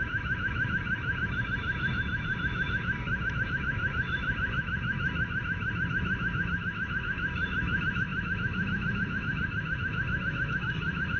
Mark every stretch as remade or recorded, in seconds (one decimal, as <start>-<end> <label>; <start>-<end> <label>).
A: 0.0-11.2 remade